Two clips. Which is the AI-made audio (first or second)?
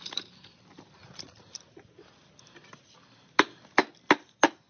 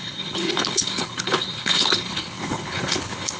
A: second